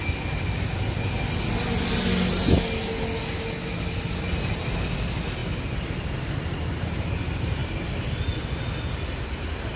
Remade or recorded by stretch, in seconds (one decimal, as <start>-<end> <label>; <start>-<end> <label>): 0.0-7.6 recorded; 7.6-8.1 remade; 8.1-9.8 recorded